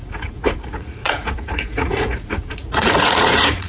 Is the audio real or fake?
fake